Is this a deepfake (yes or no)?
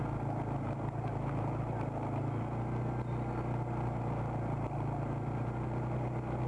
no